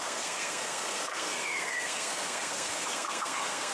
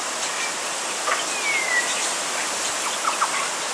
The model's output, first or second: first